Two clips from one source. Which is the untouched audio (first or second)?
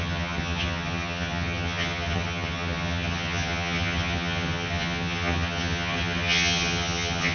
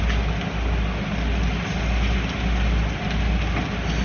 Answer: second